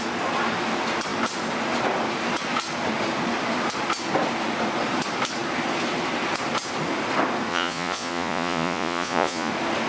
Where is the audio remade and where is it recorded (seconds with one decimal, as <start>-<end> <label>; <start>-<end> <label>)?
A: 0.0-7.5 recorded; 7.5-9.5 remade; 9.5-9.9 recorded